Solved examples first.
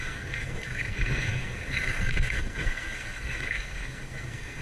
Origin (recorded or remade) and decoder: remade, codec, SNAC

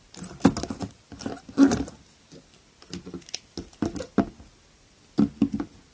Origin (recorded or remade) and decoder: recorded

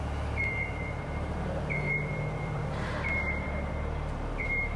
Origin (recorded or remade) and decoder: remade, vocoder, BigVGAN v2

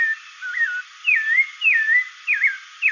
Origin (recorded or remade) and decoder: recorded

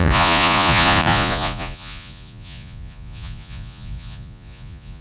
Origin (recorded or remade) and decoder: remade, vocoder, Vocos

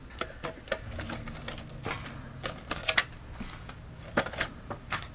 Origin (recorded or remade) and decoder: recorded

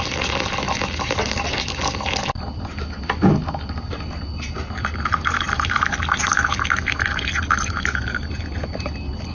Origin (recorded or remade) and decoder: recorded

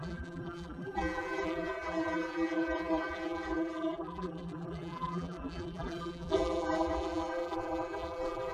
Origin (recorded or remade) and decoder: remade, vocoder, BigVGAN v2